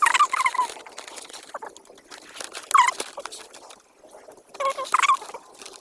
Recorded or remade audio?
recorded